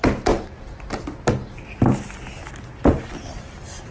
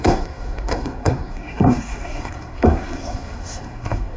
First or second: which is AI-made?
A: second